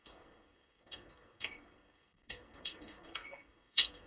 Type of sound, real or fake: fake